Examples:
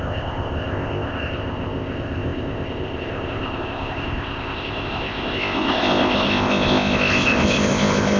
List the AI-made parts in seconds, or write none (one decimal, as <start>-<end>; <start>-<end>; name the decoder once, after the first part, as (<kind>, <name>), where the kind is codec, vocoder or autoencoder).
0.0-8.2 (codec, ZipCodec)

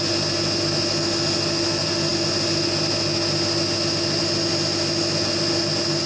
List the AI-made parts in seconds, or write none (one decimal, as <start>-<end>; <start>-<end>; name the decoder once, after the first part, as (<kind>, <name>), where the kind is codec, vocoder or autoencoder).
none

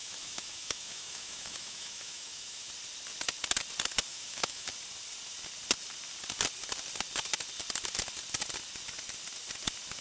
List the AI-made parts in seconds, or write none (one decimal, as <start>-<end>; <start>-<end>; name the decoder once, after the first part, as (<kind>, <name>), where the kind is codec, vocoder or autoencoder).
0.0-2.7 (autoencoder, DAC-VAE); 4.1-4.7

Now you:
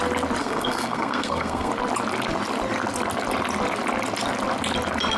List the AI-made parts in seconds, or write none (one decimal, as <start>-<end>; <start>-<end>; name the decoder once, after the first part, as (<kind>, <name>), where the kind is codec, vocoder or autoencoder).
0.4-1.7 (codec, SNAC)

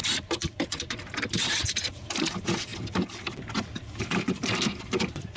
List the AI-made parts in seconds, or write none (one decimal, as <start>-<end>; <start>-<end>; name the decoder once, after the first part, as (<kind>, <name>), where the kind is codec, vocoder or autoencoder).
0.0-2.7 (vocoder, BigVGAN v2); 4.0-5.4